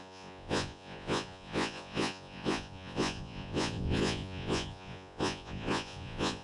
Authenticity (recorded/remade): remade